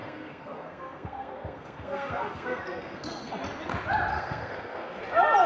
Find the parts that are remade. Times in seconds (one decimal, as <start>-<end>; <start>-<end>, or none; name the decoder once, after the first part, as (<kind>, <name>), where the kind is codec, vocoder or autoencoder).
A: 0.0-3.3 (codec, SNAC); 4.1-5.0